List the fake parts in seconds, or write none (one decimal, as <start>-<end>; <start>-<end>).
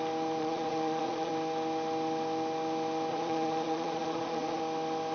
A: 0.4-1.3; 3.1-4.6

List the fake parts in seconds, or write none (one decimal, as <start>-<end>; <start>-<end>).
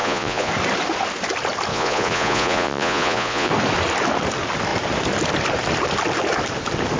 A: 0.0-0.5; 1.7-3.5